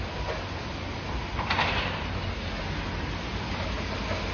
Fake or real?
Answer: real